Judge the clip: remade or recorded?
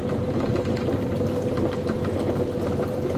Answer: recorded